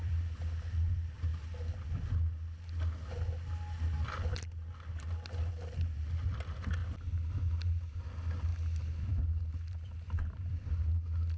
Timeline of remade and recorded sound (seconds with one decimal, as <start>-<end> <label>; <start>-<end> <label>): 0.0-11.4 recorded